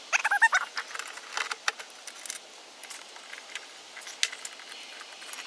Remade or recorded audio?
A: recorded